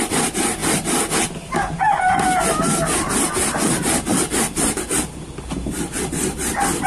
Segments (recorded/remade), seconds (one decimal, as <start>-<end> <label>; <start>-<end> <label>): 0.0-6.9 recorded